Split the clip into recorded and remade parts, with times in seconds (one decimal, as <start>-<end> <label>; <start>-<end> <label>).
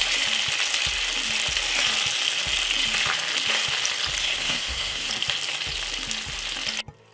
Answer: 0.0-4.2 recorded; 4.2-5.1 remade; 5.1-7.1 recorded